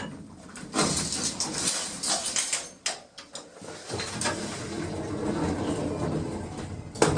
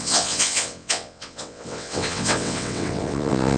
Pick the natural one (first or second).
first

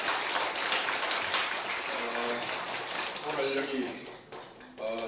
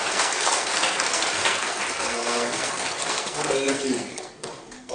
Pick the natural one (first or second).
first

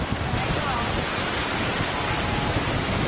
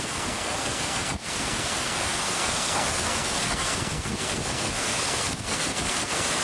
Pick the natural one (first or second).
first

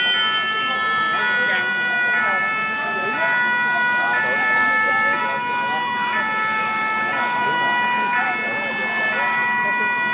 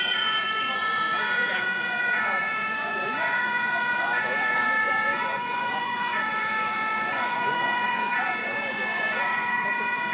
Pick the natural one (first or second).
first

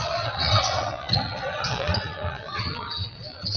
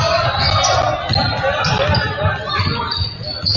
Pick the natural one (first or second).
second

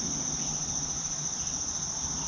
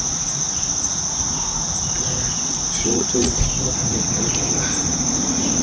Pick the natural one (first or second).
first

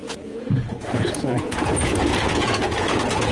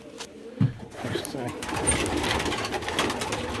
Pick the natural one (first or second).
second